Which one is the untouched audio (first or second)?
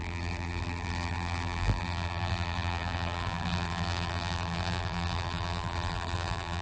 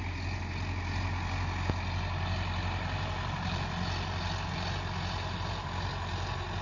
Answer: second